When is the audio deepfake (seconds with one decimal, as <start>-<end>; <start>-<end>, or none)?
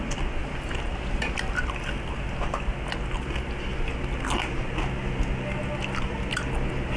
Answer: none